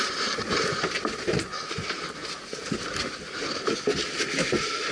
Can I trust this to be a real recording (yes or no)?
yes